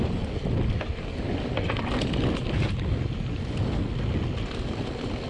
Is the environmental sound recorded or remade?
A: recorded